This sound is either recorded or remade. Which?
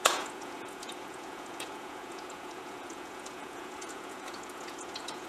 remade